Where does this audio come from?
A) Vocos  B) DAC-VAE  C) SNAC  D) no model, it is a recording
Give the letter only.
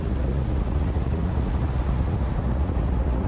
A